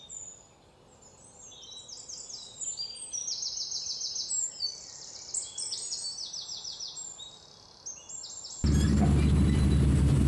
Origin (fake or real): real